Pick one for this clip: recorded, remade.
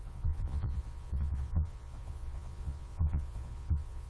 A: remade